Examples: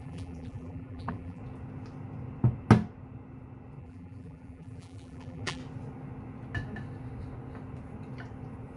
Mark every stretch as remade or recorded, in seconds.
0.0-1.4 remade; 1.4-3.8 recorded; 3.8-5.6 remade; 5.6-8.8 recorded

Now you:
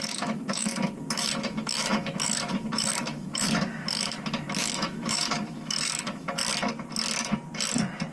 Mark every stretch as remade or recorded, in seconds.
0.0-6.4 remade; 6.4-8.1 recorded

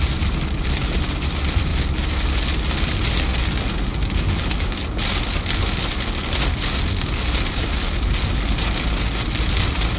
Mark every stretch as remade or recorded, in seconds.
0.0-10.0 recorded

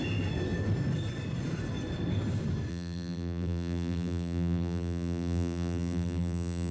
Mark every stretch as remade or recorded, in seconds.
0.0-2.7 recorded; 2.7-6.7 remade